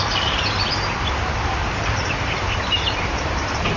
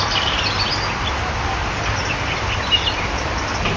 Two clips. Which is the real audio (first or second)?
second